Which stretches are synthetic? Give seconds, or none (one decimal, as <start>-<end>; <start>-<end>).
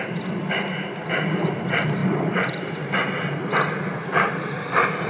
2.0-5.1